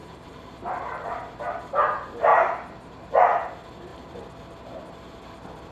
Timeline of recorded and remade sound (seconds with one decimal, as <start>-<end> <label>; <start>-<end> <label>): 0.0-1.4 remade; 1.4-2.3 recorded; 2.3-3.5 remade; 3.5-5.7 recorded